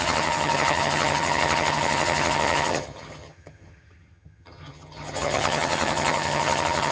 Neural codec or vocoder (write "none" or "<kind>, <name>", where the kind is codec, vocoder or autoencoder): vocoder, HiFi-GAN